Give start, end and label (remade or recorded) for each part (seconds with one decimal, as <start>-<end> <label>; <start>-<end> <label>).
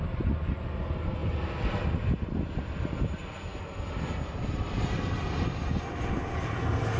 0.0-1.2 recorded; 1.2-2.2 remade; 2.2-7.0 recorded